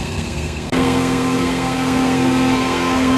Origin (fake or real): fake